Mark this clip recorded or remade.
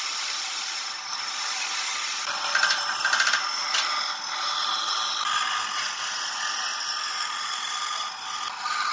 recorded